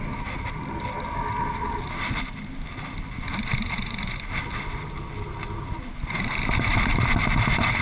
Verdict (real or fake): real